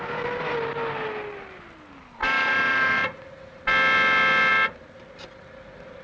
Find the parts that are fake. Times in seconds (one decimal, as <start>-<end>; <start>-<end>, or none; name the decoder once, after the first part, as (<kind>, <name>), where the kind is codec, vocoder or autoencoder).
2.2-3.6 (vocoder, BigVGAN v2)